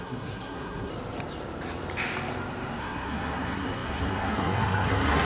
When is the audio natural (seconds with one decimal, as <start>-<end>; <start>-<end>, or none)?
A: 0.9-2.8